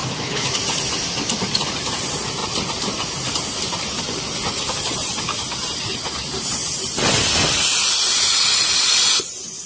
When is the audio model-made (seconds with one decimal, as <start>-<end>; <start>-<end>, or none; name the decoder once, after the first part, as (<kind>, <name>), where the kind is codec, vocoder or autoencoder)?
0.0-0.6 (autoencoder, DAC-VAE)